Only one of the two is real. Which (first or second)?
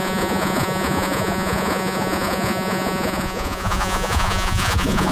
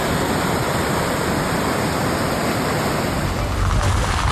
second